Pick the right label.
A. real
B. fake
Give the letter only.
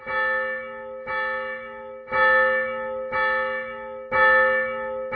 A